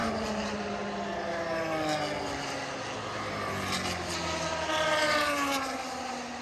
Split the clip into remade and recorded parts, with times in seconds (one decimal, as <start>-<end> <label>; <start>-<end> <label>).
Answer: 0.0-6.4 recorded